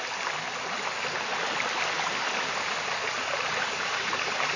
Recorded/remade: recorded